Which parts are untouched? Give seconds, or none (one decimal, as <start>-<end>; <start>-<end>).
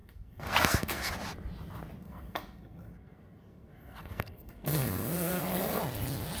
1.1-2.0; 5.8-6.4